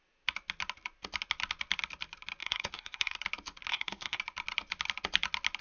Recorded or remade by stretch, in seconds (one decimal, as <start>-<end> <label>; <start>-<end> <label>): 0.0-2.4 recorded; 2.4-3.2 remade; 3.2-3.7 recorded; 3.7-4.2 remade; 4.2-5.6 recorded